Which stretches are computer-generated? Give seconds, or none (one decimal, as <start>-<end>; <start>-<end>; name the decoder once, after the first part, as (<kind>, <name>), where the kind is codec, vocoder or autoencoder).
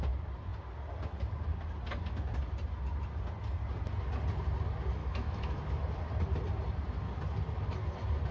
5.0-5.6 (autoencoder, DAC-VAE)